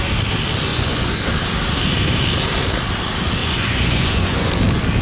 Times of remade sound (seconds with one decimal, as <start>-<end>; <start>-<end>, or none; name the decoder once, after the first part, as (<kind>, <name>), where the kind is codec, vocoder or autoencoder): 0.7-1.3 (vocoder, Vocos); 3.4-4.5

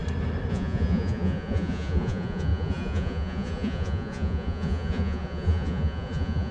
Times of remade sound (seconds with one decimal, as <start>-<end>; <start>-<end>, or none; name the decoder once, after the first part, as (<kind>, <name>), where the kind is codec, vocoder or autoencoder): 0.5-6.5 (vocoder, Vocos)

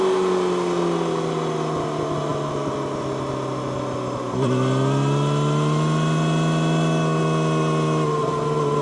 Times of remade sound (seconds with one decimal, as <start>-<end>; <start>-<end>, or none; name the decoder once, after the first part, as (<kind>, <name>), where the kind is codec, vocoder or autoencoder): none

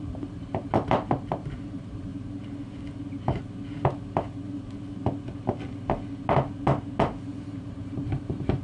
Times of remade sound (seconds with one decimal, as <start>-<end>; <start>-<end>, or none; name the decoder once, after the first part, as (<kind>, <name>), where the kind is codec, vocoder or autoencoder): 0.0-2.1 (vocoder, BigVGAN v2); 7.2-8.6

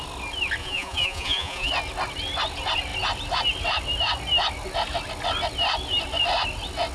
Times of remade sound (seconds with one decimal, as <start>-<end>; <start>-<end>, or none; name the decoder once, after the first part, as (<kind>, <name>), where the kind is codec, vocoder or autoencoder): 0.6-1.7 (vocoder, Vocos)

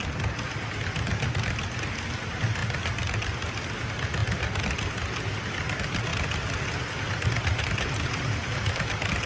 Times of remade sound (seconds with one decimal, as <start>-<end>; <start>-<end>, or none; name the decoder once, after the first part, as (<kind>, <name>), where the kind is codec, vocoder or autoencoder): none

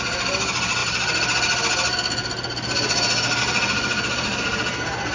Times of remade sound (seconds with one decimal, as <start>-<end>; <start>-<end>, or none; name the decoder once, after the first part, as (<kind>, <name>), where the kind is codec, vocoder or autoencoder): none

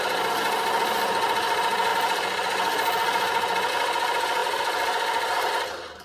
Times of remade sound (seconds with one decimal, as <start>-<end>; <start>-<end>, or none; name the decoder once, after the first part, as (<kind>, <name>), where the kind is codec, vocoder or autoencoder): none